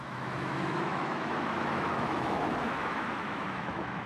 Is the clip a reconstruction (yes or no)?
yes